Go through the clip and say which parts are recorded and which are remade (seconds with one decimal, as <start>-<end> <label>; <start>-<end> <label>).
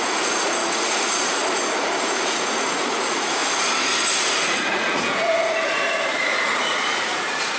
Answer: 0.0-1.4 remade; 1.4-2.0 recorded; 2.0-3.4 remade; 3.4-4.2 recorded; 4.2-7.6 remade